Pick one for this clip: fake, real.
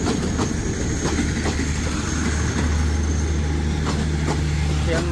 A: real